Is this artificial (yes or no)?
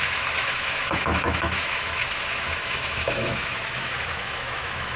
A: yes